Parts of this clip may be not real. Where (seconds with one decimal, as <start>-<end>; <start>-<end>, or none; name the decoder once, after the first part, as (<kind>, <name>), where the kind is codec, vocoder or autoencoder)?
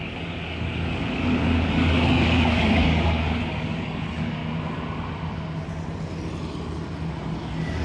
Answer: 0.0-4.4 (codec, DAC); 7.1-7.8